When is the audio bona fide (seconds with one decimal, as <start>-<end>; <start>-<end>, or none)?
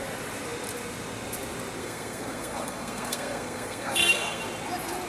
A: 0.0-1.8; 4.4-5.1